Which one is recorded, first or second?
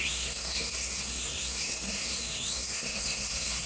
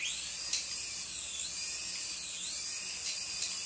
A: second